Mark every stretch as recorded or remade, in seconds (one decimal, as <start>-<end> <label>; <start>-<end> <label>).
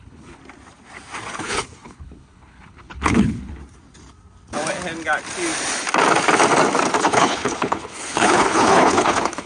0.0-0.4 remade; 0.4-1.4 recorded; 1.4-3.6 remade; 3.6-7.0 recorded; 7.0-9.5 remade